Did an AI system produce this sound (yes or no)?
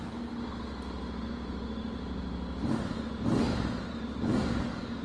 no